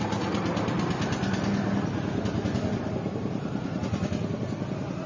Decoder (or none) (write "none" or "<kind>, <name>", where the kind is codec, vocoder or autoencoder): none